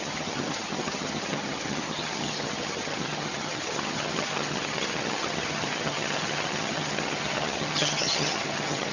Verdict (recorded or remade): remade